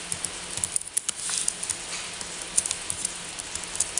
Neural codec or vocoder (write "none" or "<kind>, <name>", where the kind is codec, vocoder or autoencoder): none